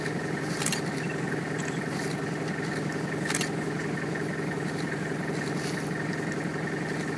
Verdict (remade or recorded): recorded